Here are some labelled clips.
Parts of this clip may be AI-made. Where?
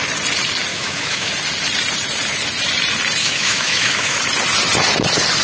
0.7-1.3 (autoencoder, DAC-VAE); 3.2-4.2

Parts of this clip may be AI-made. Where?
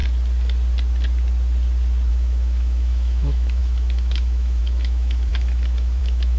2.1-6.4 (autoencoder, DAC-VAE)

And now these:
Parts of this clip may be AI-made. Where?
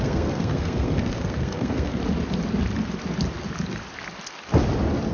0.0-2.0 (codec, SNAC)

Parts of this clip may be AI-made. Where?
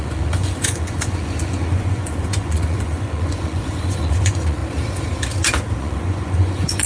0.0-4.6 (vocoder, Vocos); 5.8-6.9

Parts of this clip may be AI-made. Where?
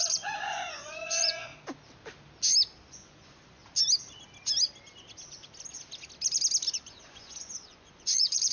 0.0-1.5 (vocoder, Vocos); 2.9-3.6; 6.9-8.5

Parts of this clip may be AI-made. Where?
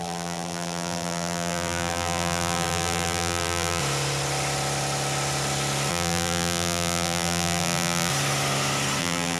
0.0-3.8 (vocoder, BigVGAN v2); 5.9-8.1; 9.0-9.4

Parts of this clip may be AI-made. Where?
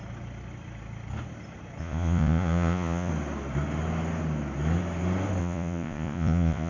1.8-3.1 (vocoder, Vocos); 5.4-6.7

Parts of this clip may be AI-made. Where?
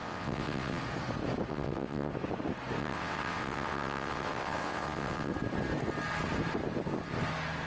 0.0-0.8 (vocoder, WaveNeXt); 1.5-2.1; 2.8-5.3